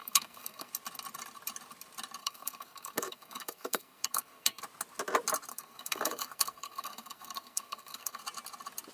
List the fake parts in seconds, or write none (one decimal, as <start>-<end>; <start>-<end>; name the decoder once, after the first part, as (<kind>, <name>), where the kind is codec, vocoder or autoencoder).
0.0-0.7 (codec, SNAC); 2.2-4.6; 5.5-8.2